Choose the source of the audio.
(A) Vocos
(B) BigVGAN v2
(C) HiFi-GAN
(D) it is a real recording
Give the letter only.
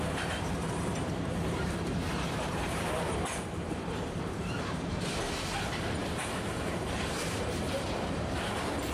B